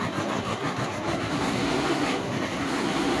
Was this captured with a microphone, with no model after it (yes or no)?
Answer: no